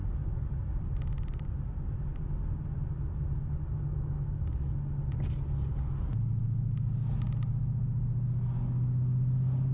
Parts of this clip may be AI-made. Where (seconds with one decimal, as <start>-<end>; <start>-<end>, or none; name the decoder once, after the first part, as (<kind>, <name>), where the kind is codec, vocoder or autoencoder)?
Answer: 3.9-4.7 (codec, DAC)